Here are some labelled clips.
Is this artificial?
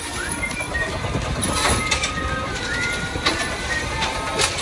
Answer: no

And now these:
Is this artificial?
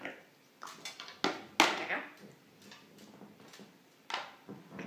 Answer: no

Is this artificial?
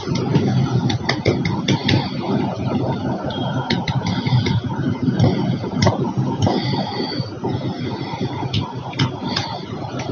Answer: no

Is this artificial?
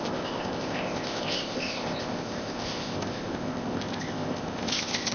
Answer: yes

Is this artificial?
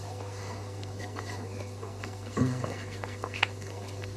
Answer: yes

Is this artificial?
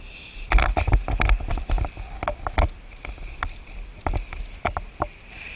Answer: no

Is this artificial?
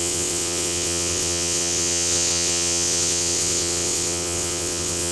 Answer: yes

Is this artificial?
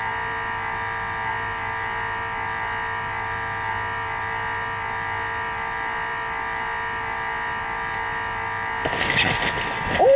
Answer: no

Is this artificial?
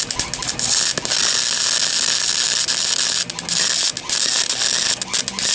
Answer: no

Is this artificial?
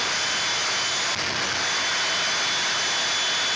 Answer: no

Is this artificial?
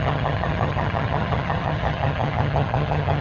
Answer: yes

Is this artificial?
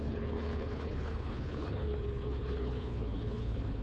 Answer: yes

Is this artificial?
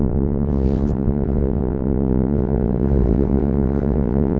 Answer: yes